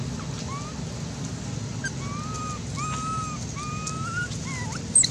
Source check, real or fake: real